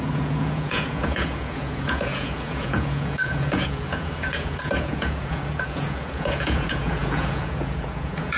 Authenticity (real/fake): fake